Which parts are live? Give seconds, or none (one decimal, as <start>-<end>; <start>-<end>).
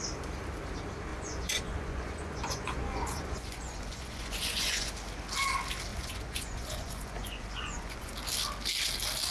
0.0-1.1; 4.9-5.9; 8.1-9.3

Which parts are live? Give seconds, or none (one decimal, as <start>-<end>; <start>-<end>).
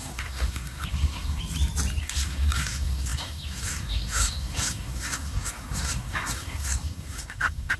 1.4-2.0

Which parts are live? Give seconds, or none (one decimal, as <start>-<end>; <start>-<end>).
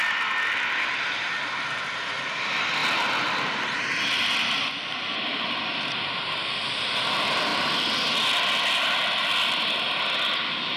0.0-10.8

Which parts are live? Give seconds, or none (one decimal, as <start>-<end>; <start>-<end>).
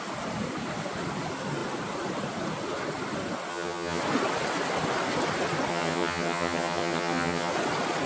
0.0-3.5; 4.0-5.7; 7.5-8.1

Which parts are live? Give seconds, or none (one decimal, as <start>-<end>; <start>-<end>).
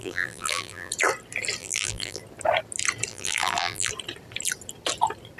0.9-1.6; 2.2-3.1; 3.9-5.4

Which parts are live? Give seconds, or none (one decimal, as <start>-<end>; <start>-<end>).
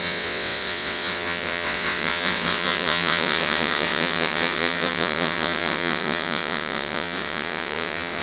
none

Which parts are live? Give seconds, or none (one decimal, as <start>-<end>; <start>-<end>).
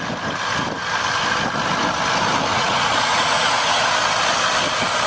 0.0-2.5; 3.8-5.1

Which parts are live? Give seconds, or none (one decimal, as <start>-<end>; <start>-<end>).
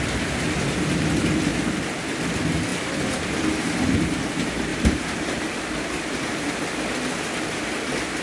0.0-2.7; 3.2-4.7; 5.6-8.2